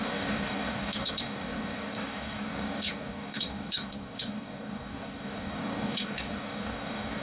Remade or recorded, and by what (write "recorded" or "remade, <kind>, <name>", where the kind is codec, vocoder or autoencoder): remade, codec, DAC